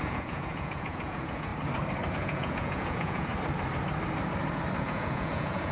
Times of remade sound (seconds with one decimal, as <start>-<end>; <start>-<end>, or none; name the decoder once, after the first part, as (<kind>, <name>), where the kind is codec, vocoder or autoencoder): 0.0-1.5 (vocoder, Vocos); 2.1-3.3; 4.8-5.7